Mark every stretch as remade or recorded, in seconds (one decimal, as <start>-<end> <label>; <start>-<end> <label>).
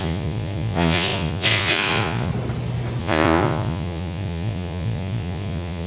0.0-2.3 remade; 2.3-3.0 recorded; 3.0-5.9 remade